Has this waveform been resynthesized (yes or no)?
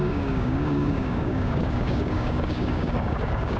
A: yes